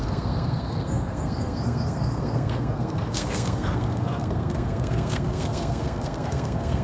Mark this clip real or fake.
fake